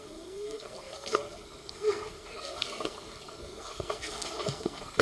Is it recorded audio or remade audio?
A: remade